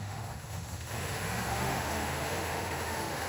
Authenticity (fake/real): fake